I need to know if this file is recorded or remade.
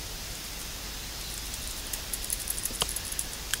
recorded